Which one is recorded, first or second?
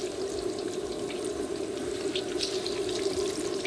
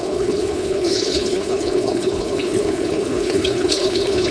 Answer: first